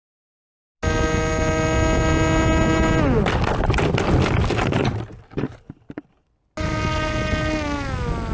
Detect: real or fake real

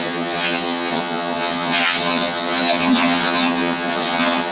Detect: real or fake fake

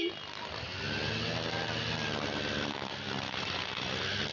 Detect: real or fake real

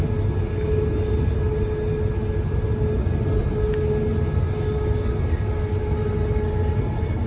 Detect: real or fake real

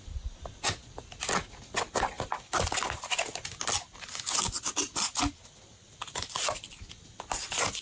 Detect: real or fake real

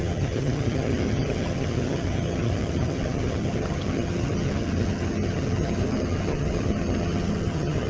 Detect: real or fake fake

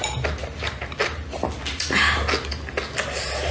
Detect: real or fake real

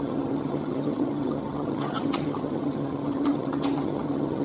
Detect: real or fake fake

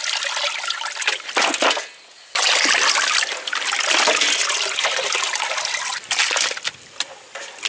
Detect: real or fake real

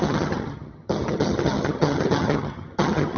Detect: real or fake fake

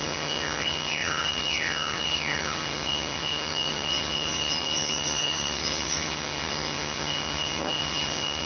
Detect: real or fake fake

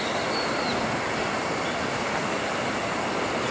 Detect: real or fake real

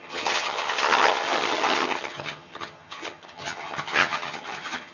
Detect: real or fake fake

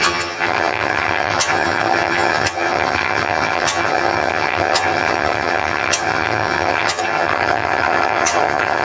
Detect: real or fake fake